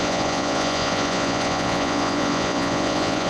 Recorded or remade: remade